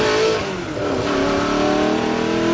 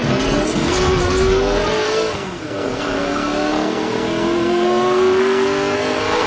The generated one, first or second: second